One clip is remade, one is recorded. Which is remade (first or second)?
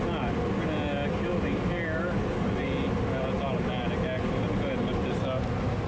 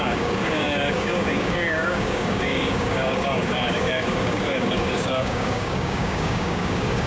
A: second